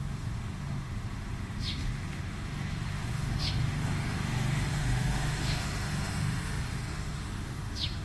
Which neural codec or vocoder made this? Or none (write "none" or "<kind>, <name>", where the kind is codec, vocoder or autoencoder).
autoencoder, DAC-VAE